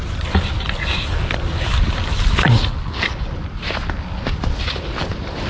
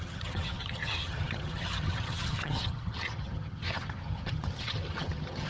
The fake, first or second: second